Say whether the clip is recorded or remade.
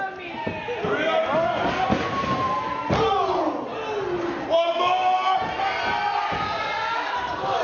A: recorded